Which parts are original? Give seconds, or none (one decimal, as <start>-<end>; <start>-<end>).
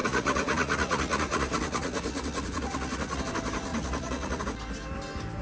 3.2-3.7; 4.4-5.4